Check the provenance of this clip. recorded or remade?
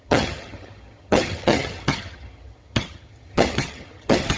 remade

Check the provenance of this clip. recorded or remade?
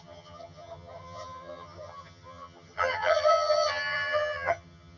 remade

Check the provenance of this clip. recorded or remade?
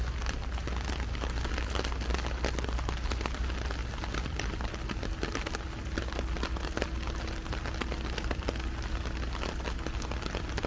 recorded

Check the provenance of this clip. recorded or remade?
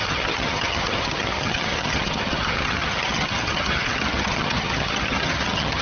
remade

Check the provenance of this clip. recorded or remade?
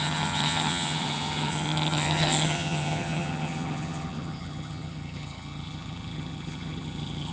remade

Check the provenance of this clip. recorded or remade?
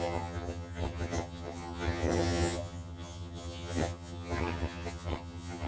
remade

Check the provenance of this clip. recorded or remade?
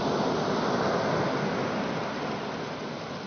recorded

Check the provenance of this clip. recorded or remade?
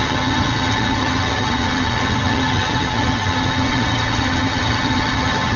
remade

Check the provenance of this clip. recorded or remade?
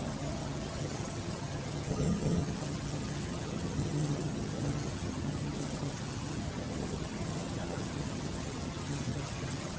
remade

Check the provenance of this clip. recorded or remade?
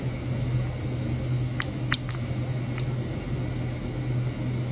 recorded